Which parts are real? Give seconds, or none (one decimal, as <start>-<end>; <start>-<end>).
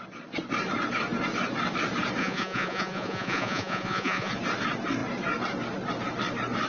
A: 0.0-2.2; 4.3-6.7